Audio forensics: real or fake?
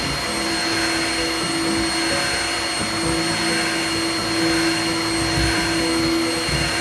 real